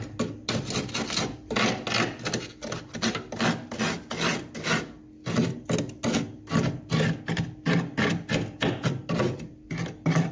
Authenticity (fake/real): real